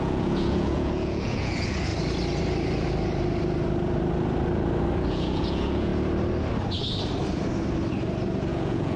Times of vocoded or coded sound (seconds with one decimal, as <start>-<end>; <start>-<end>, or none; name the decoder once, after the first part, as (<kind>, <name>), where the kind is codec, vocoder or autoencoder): 0.0-1.9 (vocoder, Vocos); 5.1-5.9; 8.5-9.0